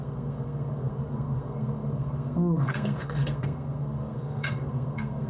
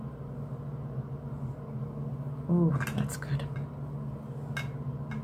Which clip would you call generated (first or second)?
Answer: first